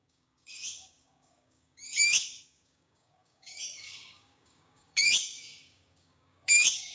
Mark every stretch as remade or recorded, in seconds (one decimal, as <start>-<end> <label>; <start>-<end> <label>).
0.0-6.9 remade